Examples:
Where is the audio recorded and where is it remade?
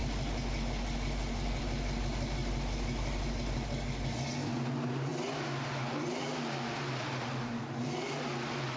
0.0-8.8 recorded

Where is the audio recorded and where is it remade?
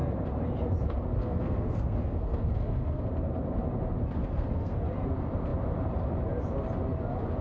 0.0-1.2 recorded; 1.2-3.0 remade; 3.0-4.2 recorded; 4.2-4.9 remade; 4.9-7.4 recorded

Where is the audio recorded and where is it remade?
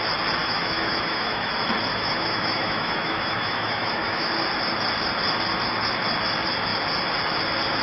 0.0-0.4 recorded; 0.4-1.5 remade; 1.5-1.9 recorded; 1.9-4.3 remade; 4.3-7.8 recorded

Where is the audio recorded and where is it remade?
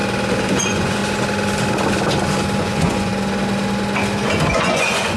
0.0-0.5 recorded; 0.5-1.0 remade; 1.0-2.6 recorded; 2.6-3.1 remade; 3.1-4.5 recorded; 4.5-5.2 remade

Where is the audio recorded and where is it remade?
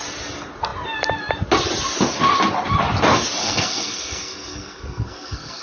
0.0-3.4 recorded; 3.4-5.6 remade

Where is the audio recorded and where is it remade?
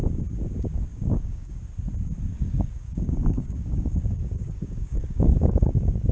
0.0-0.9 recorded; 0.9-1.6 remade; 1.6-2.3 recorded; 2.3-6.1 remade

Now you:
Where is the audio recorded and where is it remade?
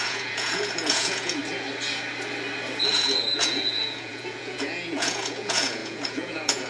0.0-1.4 remade; 1.4-2.9 recorded; 2.9-6.7 remade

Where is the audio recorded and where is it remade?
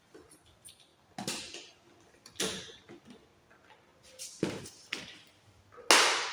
0.0-6.3 recorded